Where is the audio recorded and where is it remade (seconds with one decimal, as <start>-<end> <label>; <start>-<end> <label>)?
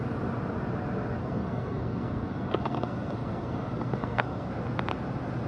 0.0-1.2 recorded; 1.2-4.5 remade; 4.5-5.5 recorded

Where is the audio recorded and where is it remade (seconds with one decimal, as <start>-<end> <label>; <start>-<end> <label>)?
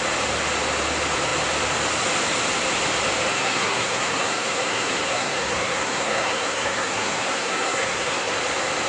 0.0-3.3 recorded; 3.3-8.4 remade; 8.4-8.9 recorded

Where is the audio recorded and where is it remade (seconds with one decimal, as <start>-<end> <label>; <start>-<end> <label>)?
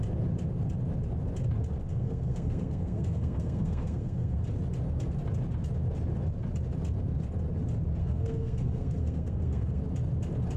0.0-1.9 recorded; 1.9-4.4 remade; 4.4-8.0 recorded; 8.0-9.8 remade; 9.8-10.6 recorded